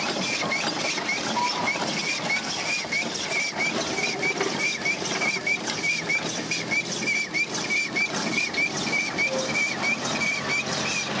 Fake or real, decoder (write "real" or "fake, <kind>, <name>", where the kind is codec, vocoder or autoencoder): real